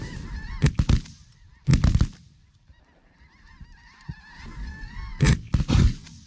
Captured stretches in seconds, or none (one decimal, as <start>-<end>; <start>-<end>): 0.0-6.3